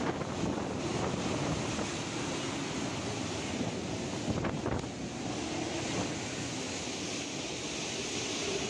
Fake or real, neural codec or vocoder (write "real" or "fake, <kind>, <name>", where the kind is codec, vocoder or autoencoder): real